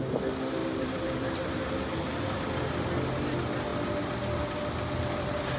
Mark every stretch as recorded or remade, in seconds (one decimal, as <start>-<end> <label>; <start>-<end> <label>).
0.0-0.6 recorded; 0.6-2.1 remade; 2.1-5.6 recorded